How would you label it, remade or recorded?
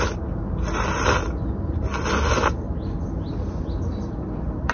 recorded